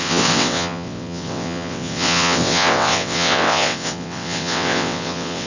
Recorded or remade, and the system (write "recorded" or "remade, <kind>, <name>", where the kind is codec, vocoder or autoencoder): remade, vocoder, WaveNeXt